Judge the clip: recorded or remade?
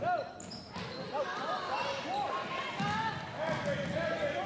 recorded